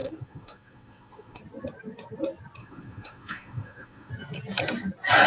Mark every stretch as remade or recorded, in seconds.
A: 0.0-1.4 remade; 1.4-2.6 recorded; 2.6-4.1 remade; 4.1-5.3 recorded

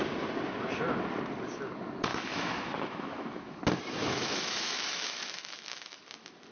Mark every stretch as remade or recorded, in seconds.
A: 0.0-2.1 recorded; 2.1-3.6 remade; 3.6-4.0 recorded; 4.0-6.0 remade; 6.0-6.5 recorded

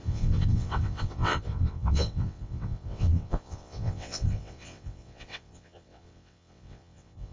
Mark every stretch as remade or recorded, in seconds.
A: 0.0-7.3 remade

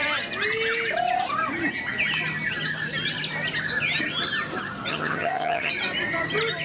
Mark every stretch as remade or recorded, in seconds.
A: 0.0-4.9 recorded; 4.9-5.7 remade; 5.7-6.6 recorded

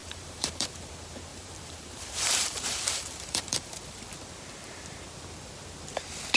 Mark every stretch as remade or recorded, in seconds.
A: 0.0-0.9 remade; 0.9-1.3 recorded; 1.3-4.0 remade; 4.0-6.4 recorded

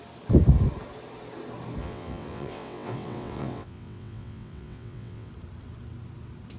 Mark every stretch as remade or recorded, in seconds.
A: 0.0-1.8 recorded; 1.8-5.3 remade; 5.3-6.6 recorded